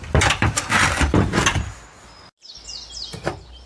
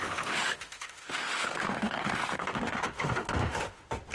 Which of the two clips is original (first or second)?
first